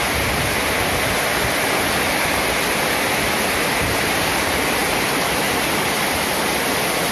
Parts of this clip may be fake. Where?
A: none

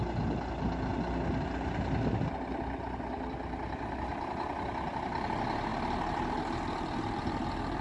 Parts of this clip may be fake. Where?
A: none